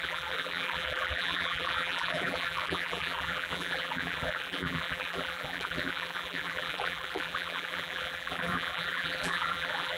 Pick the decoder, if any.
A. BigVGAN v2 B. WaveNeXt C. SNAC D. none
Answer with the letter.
A